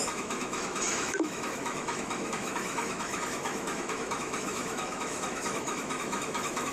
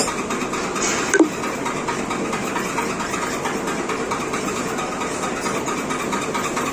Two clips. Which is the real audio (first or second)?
second